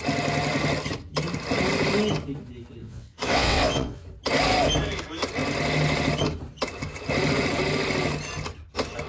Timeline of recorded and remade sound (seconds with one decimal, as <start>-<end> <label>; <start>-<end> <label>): 0.0-2.8 recorded; 2.8-4.0 remade; 4.0-9.1 recorded

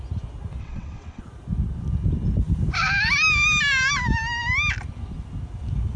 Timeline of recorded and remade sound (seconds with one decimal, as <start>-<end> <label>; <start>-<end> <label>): 0.0-0.6 recorded; 0.6-1.2 remade; 1.2-6.0 recorded